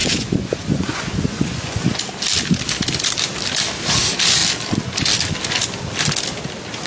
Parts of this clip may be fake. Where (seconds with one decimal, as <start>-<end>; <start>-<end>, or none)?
0.0-1.8